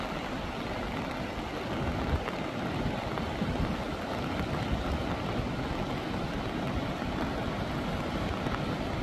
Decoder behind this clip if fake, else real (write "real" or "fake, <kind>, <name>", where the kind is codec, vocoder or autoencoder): real